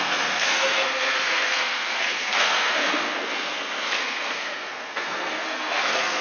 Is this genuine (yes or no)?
no